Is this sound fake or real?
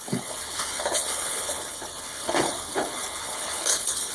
fake